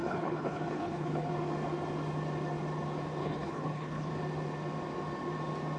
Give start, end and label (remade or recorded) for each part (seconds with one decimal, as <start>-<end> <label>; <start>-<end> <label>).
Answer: 0.0-1.3 remade; 1.3-3.2 recorded; 3.2-4.1 remade; 4.1-5.8 recorded